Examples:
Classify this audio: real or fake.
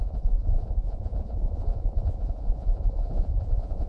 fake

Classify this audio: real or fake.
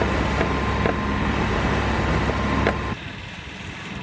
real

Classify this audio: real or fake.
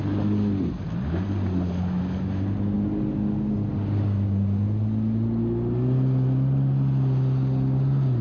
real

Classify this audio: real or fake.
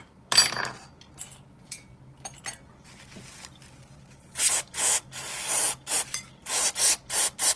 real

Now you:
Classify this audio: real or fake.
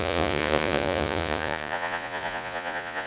fake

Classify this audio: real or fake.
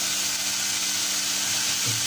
real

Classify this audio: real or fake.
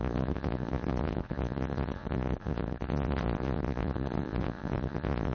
fake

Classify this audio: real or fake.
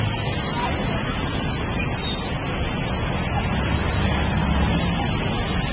real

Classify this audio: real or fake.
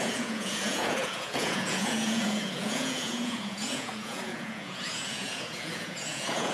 fake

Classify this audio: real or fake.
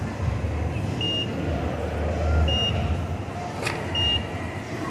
real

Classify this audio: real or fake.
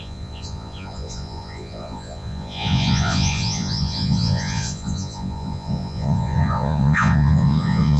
fake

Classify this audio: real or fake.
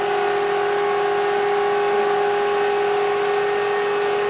real